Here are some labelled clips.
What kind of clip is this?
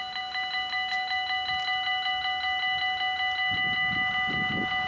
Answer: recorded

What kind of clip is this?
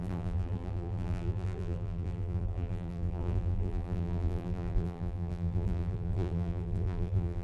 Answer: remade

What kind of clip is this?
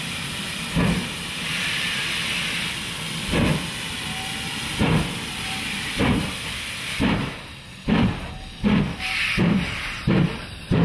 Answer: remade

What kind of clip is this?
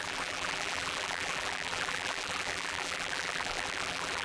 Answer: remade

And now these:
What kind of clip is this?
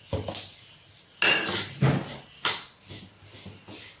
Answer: recorded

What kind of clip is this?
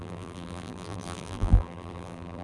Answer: remade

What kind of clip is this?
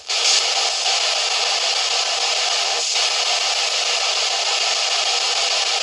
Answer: recorded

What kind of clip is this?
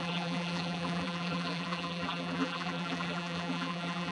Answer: remade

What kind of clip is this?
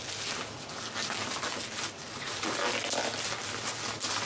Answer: recorded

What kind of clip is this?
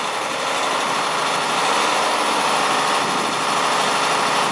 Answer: recorded